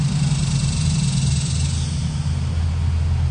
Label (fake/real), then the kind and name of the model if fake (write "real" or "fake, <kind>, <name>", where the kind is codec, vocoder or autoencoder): real